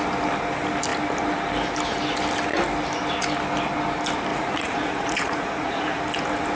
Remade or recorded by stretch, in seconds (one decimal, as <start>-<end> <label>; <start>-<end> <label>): 0.0-4.3 recorded; 4.3-6.0 remade; 6.0-6.6 recorded